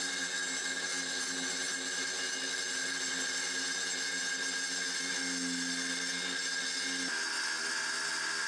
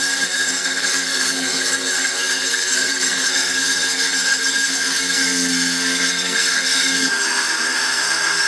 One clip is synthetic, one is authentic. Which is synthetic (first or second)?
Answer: second